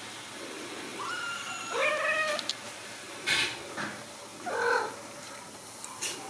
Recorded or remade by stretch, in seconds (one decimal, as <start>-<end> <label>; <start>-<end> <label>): 0.0-6.3 recorded